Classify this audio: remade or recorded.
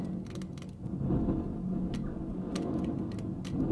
recorded